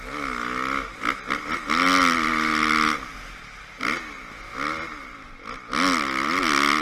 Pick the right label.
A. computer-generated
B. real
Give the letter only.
B